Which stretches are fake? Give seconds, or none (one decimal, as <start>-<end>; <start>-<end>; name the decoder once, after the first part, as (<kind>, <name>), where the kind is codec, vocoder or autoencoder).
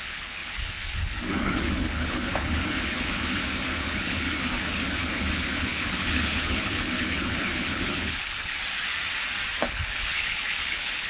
0.0-8.6 (codec, HILCodec); 9.6-11.1